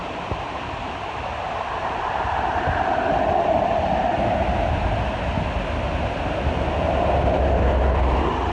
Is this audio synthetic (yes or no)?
no